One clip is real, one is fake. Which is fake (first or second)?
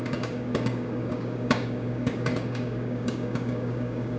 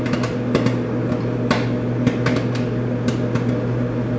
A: first